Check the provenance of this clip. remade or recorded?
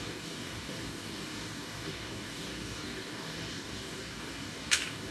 remade